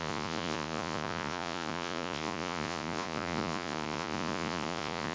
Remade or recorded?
remade